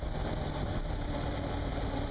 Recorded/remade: recorded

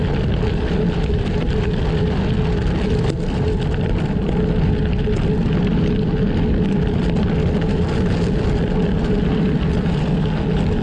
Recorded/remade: recorded